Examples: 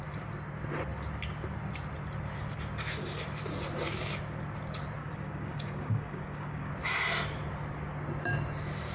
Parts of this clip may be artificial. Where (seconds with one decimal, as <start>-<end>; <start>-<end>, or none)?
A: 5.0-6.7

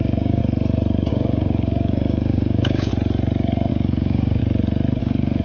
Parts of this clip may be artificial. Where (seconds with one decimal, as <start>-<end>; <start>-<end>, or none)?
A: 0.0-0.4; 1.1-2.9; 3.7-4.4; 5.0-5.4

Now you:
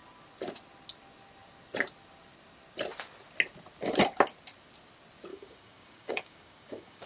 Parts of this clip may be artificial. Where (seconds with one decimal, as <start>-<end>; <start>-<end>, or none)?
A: 5.3-7.1